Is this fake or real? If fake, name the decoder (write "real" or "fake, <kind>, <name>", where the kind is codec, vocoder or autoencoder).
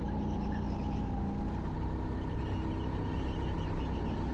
real